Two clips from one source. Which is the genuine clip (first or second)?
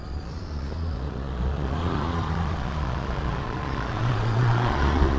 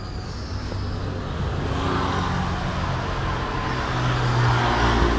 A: second